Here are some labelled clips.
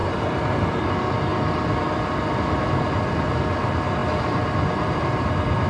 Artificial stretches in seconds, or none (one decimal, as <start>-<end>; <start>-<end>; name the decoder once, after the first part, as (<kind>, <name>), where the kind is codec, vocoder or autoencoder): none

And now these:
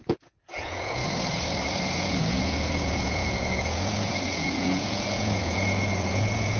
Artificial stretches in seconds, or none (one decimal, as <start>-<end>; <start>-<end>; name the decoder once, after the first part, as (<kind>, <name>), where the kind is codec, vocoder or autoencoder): 0.0-1.0 (vocoder, Vocos); 1.8-6.6

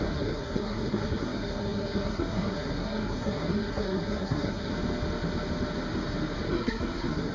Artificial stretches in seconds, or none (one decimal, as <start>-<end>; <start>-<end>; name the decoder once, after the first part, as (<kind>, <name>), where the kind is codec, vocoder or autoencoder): 0.0-4.7 (codec, SNAC); 6.5-7.3